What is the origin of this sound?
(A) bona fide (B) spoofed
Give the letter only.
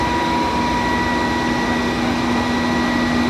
B